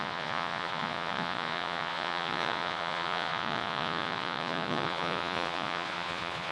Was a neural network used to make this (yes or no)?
yes